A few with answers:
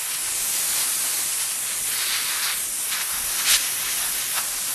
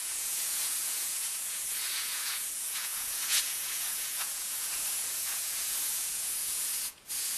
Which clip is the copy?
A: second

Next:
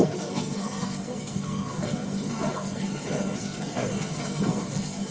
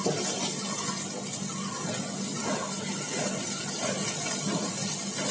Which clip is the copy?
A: first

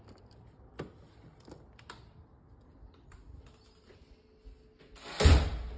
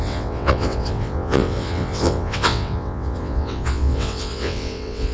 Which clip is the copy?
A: second